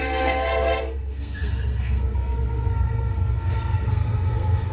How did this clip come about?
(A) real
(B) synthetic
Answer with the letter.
B